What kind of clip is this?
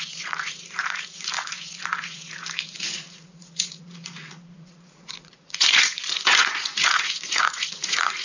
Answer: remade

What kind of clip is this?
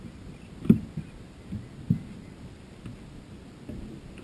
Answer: recorded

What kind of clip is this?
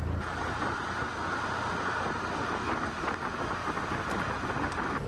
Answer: recorded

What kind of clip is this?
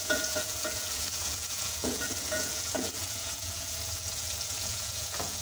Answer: remade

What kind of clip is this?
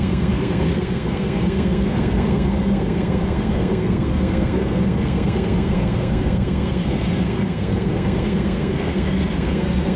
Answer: remade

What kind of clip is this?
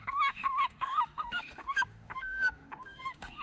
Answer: remade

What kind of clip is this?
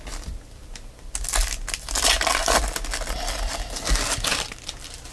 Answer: recorded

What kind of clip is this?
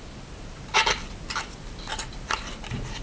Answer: recorded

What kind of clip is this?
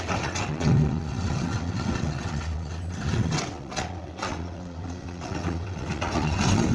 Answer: remade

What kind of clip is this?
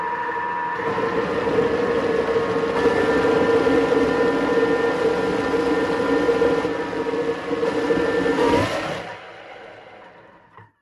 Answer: recorded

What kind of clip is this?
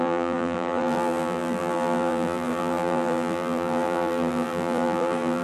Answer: remade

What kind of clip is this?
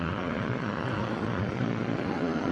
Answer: remade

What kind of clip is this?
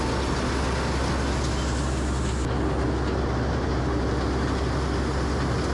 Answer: recorded